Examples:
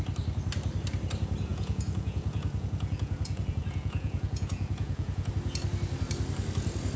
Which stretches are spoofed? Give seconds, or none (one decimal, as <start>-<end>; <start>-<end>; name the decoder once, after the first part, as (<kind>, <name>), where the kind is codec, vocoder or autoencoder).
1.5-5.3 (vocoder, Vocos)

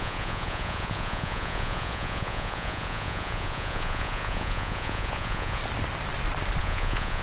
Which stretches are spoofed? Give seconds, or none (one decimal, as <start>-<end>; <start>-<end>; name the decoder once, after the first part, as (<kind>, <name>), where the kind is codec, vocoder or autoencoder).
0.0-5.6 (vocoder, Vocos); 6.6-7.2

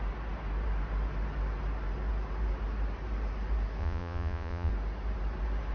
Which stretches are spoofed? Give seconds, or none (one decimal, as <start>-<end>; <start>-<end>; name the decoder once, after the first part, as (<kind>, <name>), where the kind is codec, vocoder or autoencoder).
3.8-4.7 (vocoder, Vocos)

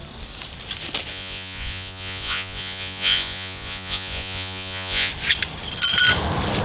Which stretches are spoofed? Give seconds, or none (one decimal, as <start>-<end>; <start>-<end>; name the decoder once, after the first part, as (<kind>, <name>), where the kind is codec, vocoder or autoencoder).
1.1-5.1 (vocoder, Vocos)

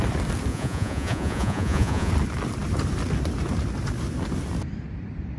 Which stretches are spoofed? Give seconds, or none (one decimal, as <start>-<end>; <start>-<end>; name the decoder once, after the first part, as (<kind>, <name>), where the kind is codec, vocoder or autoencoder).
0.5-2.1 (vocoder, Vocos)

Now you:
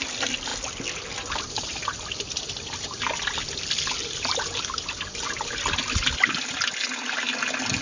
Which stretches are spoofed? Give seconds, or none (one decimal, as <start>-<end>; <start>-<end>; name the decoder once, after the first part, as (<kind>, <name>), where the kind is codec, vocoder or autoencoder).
none

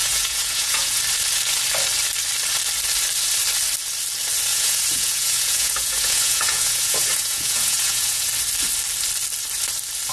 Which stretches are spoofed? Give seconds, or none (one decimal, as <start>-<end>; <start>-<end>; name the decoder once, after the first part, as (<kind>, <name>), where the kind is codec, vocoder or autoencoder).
0.0-1.0 (vocoder, Vocos); 4.5-8.3

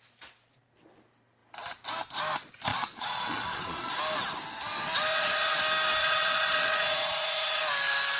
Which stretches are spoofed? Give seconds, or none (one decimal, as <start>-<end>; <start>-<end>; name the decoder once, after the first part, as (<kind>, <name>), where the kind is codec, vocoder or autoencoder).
2.7-3.9 (vocoder, Vocos); 5.1-5.6; 6.0-7.6